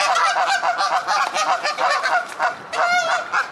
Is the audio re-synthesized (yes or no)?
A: no